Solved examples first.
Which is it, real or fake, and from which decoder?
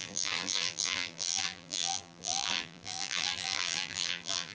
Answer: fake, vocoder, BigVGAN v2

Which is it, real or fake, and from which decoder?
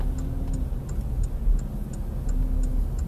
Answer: real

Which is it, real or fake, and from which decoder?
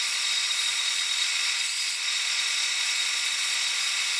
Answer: fake, vocoder, Vocos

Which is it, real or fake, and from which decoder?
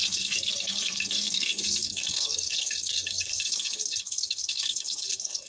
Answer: fake, codec, SNAC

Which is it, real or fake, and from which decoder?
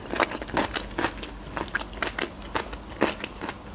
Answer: real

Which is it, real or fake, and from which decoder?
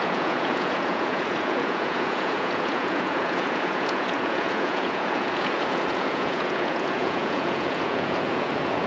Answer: fake, vocoder, Vocos